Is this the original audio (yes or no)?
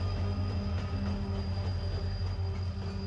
yes